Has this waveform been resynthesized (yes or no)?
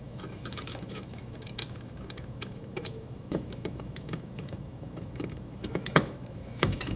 yes